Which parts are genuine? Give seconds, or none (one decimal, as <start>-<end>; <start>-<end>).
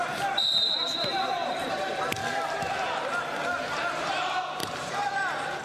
2.2-4.0